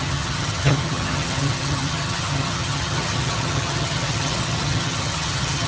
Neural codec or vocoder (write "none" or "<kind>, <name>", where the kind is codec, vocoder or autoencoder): vocoder, HiFi-GAN